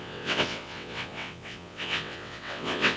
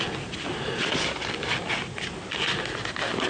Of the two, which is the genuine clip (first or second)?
second